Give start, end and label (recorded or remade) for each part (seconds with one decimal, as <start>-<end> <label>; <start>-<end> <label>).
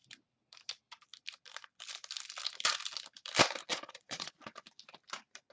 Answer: 0.0-3.7 recorded; 3.7-4.3 remade; 4.3-5.5 recorded